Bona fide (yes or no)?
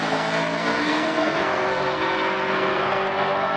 no